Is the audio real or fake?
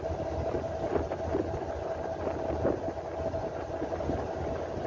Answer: real